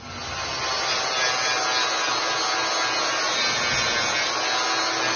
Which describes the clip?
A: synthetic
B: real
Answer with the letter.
B